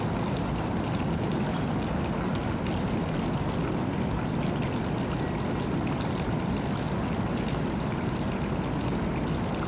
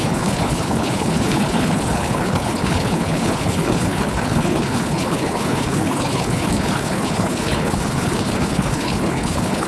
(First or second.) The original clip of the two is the first